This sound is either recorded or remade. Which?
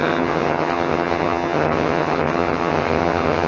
remade